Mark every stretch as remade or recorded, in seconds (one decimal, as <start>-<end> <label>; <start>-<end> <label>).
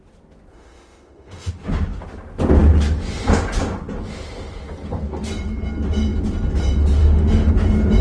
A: 0.0-0.5 recorded; 0.5-1.5 remade; 1.5-7.0 recorded; 7.0-7.5 remade; 7.5-8.0 recorded